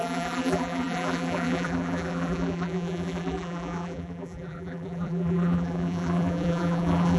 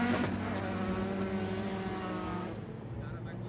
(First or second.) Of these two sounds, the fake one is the first